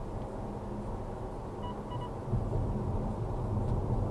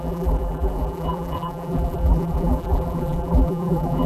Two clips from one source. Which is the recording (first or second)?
first